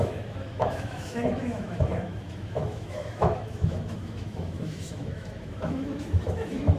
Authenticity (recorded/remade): remade